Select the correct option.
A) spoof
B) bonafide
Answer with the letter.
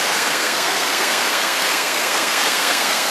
A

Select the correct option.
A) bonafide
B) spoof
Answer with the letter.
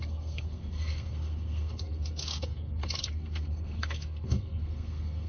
B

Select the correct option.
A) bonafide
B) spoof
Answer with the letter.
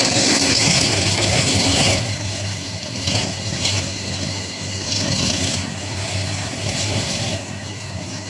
B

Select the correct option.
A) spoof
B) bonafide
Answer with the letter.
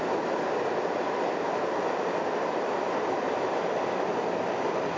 B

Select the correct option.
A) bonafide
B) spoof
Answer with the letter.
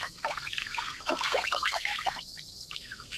B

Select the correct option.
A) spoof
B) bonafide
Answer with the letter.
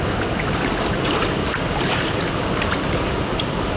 B